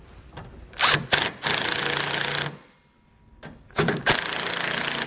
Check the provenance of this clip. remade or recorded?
recorded